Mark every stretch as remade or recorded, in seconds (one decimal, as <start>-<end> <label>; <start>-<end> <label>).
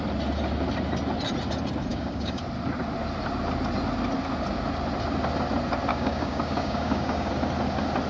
0.0-1.9 recorded; 1.9-2.4 remade; 2.4-5.9 recorded; 5.9-7.3 remade; 7.3-8.1 recorded